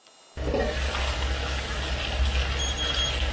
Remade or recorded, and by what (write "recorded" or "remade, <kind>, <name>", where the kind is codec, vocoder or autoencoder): recorded